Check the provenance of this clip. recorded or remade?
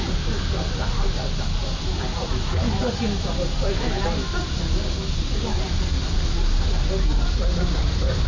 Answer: recorded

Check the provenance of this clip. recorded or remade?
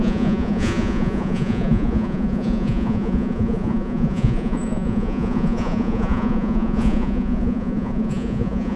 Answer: remade